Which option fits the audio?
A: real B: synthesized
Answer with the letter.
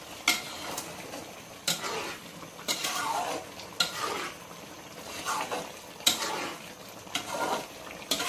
A